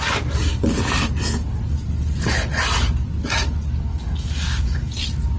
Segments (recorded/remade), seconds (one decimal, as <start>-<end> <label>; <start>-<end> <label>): 0.0-3.9 recorded; 3.9-4.9 remade; 4.9-5.4 recorded